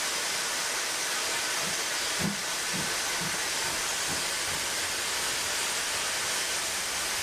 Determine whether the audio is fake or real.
real